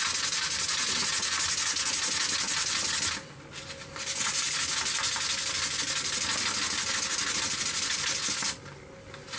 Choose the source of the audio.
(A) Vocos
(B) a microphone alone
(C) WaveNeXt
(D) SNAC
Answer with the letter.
B